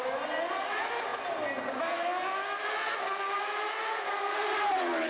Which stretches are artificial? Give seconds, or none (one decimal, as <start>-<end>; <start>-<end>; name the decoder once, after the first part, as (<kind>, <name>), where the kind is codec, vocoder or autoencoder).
none